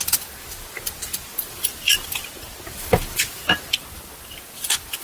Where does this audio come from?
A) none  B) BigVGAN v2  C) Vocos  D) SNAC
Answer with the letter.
A